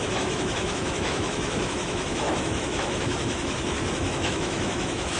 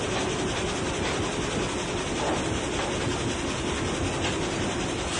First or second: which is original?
second